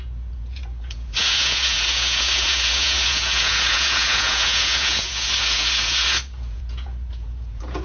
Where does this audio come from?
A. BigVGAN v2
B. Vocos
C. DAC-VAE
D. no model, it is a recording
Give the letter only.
B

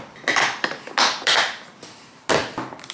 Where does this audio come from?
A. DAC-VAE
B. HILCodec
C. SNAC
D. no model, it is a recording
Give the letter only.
D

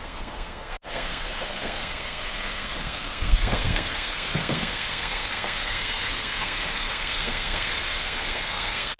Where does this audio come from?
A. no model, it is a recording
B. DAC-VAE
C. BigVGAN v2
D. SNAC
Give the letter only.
D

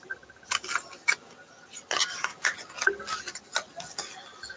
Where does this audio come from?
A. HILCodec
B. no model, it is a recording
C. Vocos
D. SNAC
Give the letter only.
B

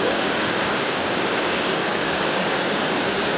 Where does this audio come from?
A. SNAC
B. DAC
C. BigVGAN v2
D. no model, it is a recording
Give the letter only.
B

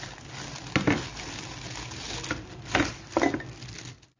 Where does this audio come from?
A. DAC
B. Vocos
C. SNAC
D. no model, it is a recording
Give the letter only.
D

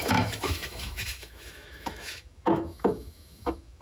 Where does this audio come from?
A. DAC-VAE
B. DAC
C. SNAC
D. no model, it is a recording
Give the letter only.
A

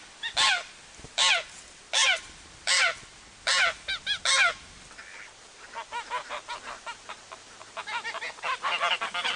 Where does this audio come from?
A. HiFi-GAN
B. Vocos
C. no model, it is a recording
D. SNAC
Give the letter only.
C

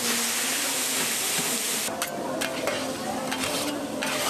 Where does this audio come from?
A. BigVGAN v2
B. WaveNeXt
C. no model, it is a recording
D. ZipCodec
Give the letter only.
C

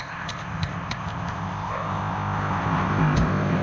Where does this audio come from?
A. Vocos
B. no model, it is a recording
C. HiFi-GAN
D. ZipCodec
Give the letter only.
D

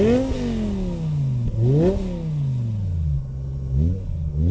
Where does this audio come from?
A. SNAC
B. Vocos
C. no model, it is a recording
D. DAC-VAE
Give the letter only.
C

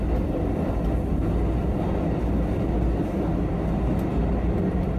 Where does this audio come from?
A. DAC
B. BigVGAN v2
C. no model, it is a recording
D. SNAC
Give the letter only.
C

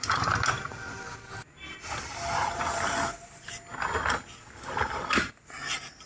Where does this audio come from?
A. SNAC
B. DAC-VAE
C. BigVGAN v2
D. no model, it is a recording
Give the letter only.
D